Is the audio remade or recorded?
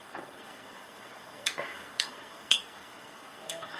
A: remade